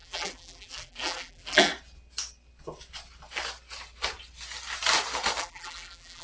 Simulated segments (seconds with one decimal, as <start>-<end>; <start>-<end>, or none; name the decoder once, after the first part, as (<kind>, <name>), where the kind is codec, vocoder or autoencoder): 0.0-1.7 (vocoder, BigVGAN v2); 5.4-6.2